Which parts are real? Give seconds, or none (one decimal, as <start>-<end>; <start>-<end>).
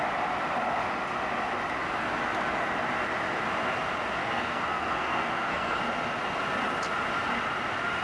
0.0-4.2; 5.8-8.0